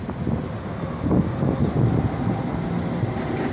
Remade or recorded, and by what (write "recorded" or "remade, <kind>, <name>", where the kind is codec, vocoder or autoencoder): recorded